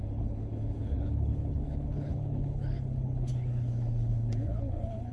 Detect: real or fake fake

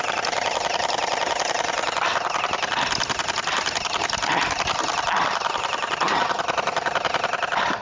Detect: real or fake real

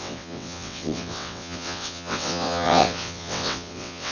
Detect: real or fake fake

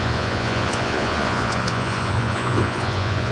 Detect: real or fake fake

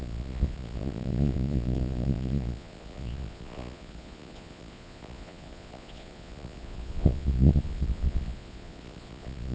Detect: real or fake fake